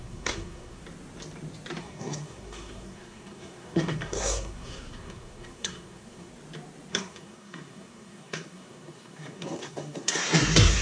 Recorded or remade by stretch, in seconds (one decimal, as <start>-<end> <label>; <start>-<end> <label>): 0.0-0.8 remade; 0.8-1.8 recorded; 1.8-6.3 remade; 6.3-6.9 recorded; 6.9-10.8 remade